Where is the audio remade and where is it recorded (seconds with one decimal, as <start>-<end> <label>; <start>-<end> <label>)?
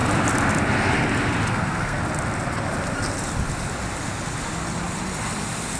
0.0-1.5 recorded; 1.5-2.0 remade; 2.0-5.8 recorded